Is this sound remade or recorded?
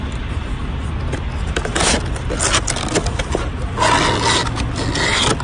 recorded